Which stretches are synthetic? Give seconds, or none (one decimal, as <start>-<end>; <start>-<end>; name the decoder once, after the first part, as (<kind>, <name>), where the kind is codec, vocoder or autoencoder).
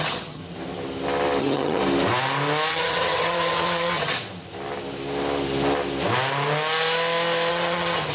0.0-0.4 (vocoder, HiFi-GAN); 1.4-1.8; 2.7-4.1; 7.5-8.1